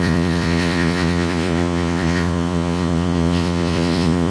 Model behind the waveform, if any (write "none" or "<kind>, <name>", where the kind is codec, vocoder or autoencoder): vocoder, Vocos